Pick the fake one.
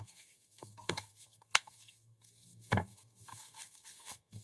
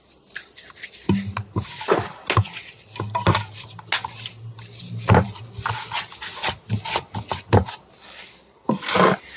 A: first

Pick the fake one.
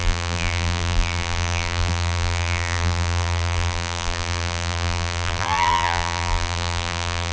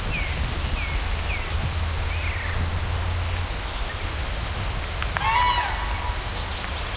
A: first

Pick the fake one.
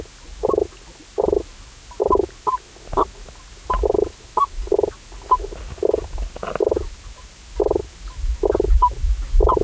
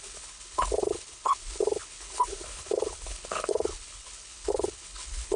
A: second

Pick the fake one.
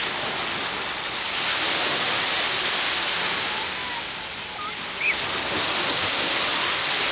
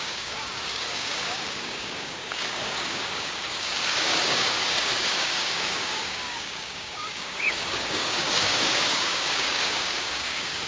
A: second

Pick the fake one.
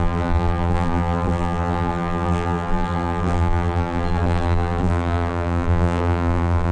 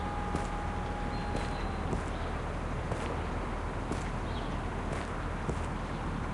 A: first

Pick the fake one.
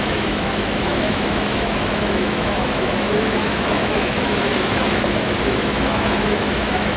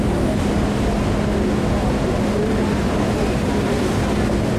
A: first